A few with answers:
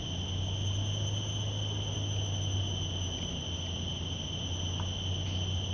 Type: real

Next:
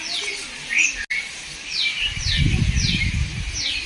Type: real